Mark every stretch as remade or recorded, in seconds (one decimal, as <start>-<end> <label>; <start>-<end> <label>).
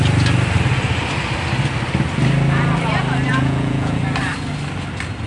0.0-3.3 recorded; 3.3-4.0 remade; 4.0-5.3 recorded